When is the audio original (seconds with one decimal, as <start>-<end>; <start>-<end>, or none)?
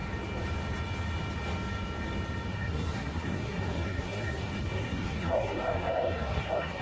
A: 0.0-2.5